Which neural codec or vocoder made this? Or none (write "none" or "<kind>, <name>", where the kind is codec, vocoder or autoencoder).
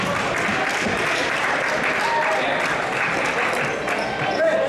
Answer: vocoder, BigVGAN v2